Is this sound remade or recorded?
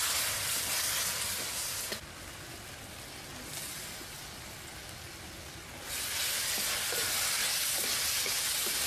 recorded